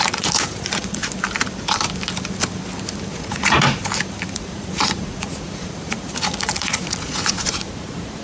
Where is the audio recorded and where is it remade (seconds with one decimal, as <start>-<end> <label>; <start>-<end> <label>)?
0.0-1.0 remade; 1.0-3.1 recorded; 3.1-3.8 remade; 3.8-4.3 recorded; 4.3-8.2 remade